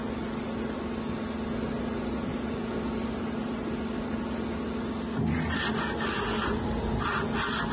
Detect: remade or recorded recorded